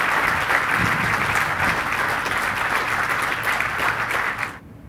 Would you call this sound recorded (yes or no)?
yes